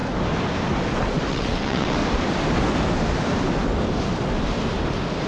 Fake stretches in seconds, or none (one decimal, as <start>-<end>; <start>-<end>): 1.3-2.0